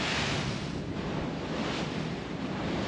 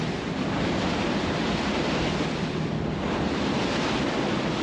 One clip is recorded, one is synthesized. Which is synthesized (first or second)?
first